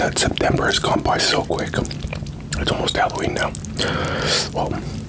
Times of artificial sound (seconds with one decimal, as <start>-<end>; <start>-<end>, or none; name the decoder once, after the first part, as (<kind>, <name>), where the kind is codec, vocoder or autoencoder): none